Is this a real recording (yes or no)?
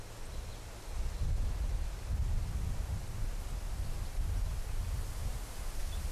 yes